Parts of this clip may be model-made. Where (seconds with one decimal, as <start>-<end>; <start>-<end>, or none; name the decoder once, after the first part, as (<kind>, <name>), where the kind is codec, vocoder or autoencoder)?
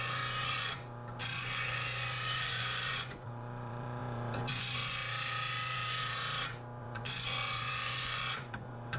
0.0-5.0 (vocoder, Vocos); 5.5-6.0; 6.8-9.0